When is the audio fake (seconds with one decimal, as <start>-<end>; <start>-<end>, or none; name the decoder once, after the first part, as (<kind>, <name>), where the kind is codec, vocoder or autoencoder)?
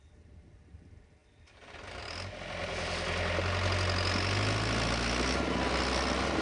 none